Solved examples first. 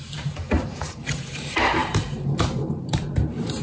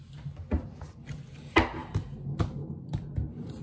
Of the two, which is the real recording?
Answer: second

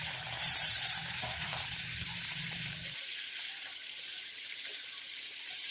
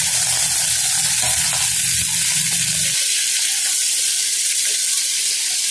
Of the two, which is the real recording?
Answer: second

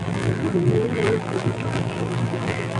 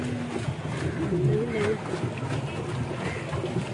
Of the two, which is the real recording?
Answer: second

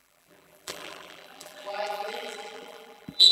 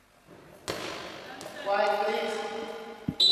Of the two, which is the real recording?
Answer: second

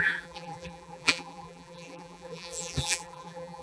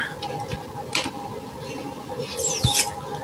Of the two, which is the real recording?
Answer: second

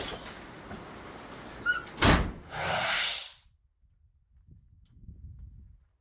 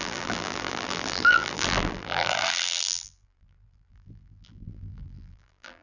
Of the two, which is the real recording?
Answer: first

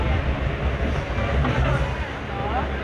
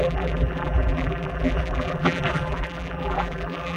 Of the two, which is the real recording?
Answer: first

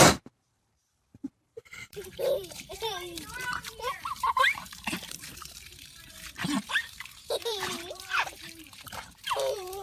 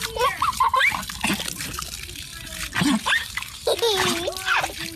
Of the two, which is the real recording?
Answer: second